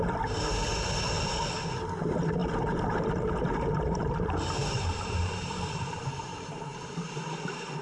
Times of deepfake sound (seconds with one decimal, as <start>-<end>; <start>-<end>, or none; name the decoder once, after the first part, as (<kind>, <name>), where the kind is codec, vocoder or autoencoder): 2.4-6.6 (vocoder, BigVGAN v2)